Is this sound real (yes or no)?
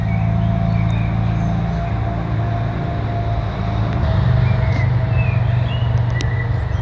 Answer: yes